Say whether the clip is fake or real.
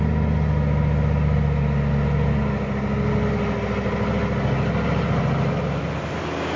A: real